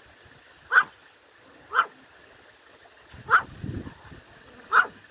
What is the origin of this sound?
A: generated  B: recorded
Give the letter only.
B